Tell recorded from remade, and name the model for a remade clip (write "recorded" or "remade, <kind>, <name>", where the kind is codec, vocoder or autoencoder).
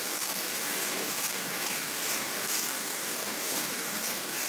remade, codec, DAC